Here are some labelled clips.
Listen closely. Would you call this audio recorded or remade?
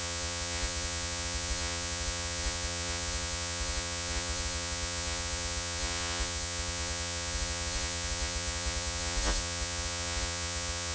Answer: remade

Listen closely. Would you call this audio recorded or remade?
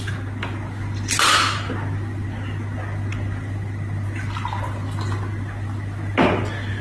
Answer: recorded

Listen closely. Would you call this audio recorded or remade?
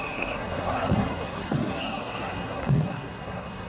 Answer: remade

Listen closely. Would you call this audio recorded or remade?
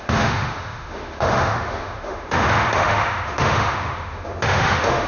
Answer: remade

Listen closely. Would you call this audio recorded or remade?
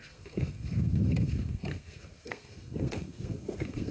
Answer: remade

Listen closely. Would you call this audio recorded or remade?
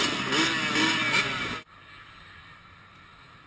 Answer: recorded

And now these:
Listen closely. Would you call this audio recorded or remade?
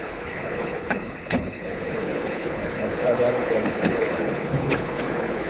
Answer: remade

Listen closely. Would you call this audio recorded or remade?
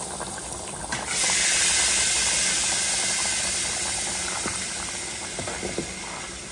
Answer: recorded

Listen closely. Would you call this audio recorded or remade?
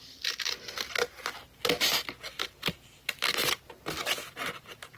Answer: recorded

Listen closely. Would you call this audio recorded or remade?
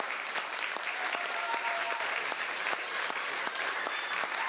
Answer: remade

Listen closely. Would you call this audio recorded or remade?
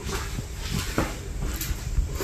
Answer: recorded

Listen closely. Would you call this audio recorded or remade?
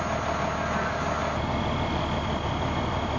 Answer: recorded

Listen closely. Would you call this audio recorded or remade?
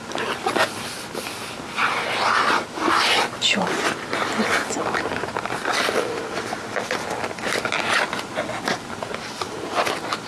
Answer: recorded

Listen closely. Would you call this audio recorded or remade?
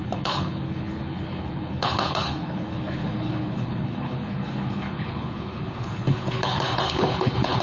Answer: remade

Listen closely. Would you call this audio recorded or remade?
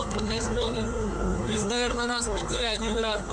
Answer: remade